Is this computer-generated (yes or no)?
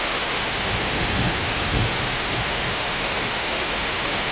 yes